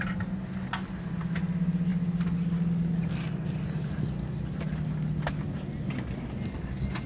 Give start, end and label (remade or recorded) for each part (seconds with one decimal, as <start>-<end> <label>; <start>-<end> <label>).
0.0-7.1 recorded